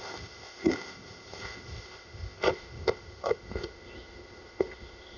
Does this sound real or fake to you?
fake